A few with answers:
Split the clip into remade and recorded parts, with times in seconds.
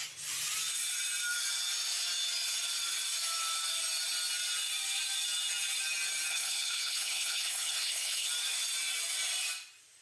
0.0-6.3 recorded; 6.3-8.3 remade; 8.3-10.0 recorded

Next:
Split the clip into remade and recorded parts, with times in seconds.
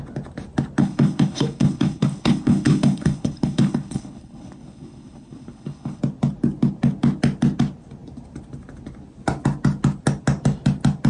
0.0-0.8 recorded; 0.8-6.0 remade; 6.0-11.1 recorded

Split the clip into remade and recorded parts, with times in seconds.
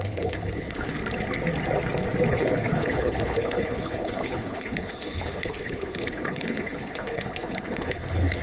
0.0-1.0 remade; 1.0-2.3 recorded; 2.3-8.4 remade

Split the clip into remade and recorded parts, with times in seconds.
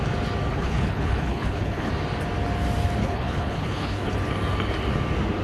0.0-0.5 recorded; 0.5-1.9 remade; 1.9-3.0 recorded; 3.0-4.1 remade; 4.1-5.4 recorded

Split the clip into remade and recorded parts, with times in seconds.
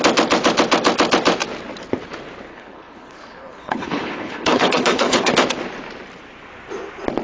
0.0-2.5 recorded; 2.5-5.3 remade; 5.3-7.2 recorded